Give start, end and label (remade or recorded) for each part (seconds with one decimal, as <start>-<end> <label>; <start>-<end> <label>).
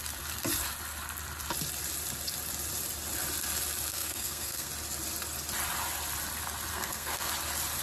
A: 0.0-3.9 recorded; 3.9-4.7 remade; 4.7-6.7 recorded; 6.7-7.3 remade; 7.3-7.8 recorded